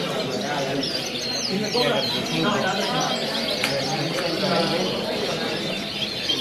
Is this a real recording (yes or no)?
no